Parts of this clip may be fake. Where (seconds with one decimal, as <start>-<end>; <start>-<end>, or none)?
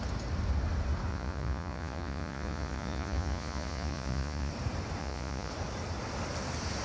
1.1-4.5; 5.0-5.5